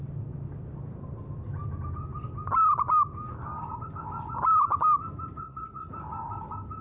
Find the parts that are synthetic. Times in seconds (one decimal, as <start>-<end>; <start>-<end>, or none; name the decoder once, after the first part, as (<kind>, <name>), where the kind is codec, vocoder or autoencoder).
5.4-5.9 (vocoder, WaveNeXt)